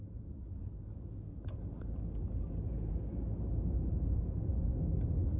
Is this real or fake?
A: real